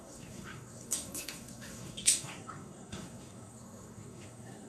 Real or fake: fake